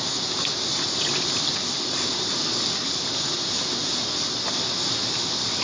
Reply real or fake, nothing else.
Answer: real